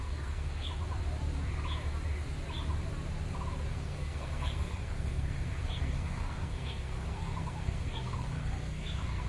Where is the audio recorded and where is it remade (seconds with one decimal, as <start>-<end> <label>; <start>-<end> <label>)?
0.0-0.7 remade; 0.7-3.7 recorded; 3.7-9.3 remade